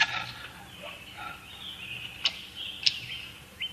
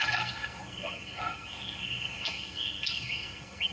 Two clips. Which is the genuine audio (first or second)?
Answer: first